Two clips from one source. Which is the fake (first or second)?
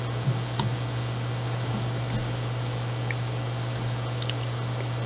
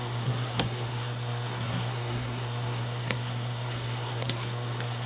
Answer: second